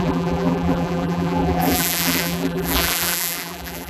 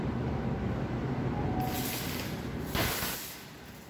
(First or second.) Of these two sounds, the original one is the second